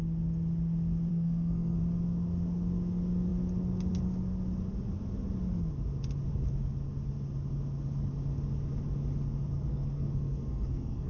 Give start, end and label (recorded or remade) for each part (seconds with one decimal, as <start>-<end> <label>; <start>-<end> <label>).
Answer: 0.0-1.1 recorded; 1.1-1.8 remade; 1.8-9.7 recorded; 9.7-11.1 remade